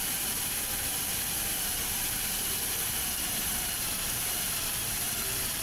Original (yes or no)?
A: no